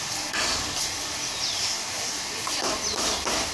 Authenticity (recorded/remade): recorded